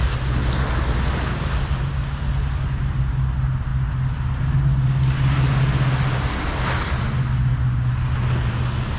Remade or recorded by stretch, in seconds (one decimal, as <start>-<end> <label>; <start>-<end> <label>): 0.0-9.0 recorded